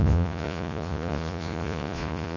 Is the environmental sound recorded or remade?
remade